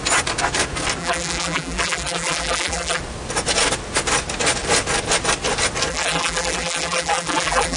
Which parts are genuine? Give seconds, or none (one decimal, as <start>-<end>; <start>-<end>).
0.0-1.0; 3.0-5.9

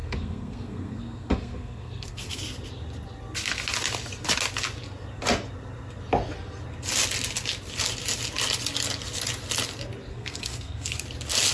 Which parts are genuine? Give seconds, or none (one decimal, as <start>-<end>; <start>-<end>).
2.4-10.1; 11.0-11.5

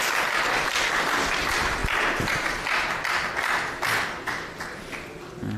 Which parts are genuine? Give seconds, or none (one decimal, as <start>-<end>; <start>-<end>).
0.0-5.6